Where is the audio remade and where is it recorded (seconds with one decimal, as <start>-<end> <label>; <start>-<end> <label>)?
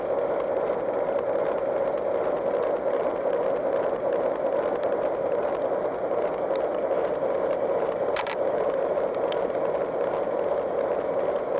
0.0-6.7 recorded; 6.7-8.8 remade; 8.8-11.6 recorded